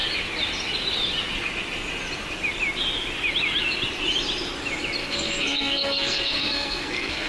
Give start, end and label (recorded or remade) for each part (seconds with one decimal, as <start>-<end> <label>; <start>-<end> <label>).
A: 0.0-5.0 recorded; 5.0-7.3 remade